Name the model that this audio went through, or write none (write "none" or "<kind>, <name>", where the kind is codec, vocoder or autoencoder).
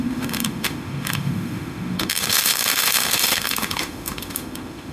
autoencoder, DAC-VAE